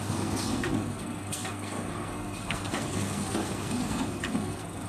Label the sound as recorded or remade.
remade